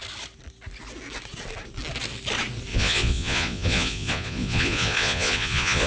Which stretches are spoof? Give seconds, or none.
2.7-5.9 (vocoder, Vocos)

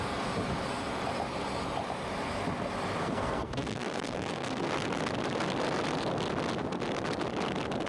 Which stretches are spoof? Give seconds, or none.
3.0-4.7 (codec, SNAC)